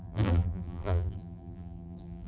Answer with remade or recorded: remade